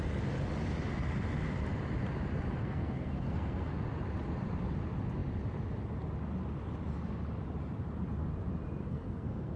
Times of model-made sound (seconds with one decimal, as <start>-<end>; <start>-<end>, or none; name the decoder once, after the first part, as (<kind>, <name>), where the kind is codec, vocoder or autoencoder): 2.6-3.7 (codec, SNAC); 8.8-9.6